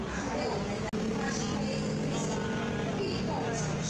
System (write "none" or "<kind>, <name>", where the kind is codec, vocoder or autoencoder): none